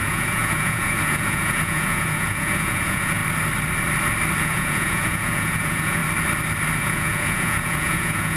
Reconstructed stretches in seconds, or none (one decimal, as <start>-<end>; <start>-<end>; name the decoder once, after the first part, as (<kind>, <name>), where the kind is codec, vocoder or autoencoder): 0.0-3.2 (vocoder, Vocos); 4.4-6.0; 6.8-8.4